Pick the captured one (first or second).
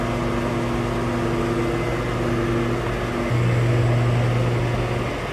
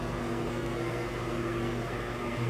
first